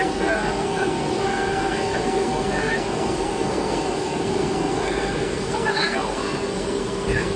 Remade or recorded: remade